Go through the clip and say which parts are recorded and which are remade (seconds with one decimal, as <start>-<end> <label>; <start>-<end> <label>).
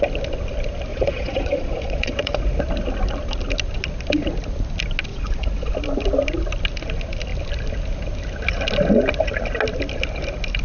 0.0-0.9 recorded; 0.9-2.4 remade; 2.4-5.1 recorded; 5.1-5.7 remade; 5.7-10.6 recorded